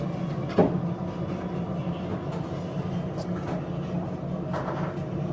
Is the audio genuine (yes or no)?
yes